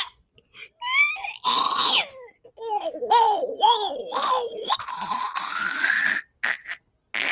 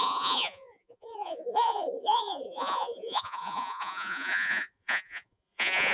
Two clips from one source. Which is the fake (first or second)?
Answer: second